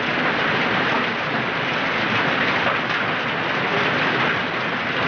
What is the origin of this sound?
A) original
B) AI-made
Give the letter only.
A